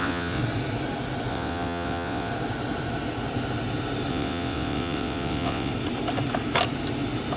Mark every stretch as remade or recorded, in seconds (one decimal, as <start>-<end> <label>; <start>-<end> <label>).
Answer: 0.0-0.4 remade; 0.4-1.3 recorded; 1.3-2.3 remade; 2.3-4.1 recorded; 4.1-5.7 remade; 5.7-7.4 recorded